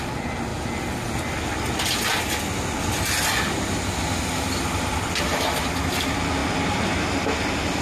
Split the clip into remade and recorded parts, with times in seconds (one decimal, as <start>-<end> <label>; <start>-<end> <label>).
0.0-7.8 recorded